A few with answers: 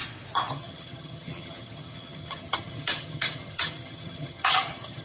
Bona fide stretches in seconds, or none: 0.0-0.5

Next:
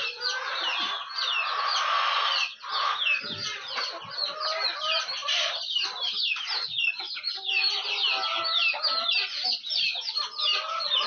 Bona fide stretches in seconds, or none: 0.0-5.2; 6.3-11.1

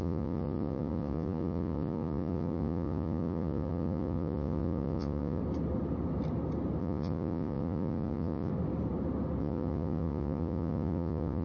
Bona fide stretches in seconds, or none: 5.4-6.8; 8.5-9.4

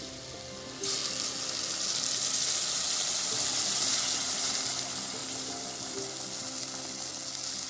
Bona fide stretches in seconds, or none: 0.0-7.7